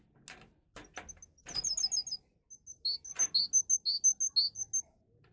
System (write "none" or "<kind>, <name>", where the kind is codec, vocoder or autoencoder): none